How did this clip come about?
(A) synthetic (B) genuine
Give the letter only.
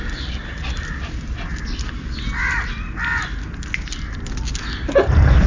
B